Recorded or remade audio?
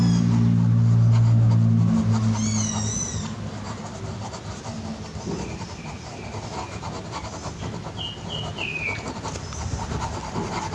recorded